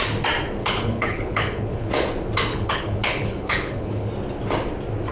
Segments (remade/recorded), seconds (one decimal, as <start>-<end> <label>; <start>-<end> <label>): 0.0-0.6 recorded; 0.6-1.9 remade; 1.9-2.5 recorded; 2.5-4.1 remade; 4.1-5.1 recorded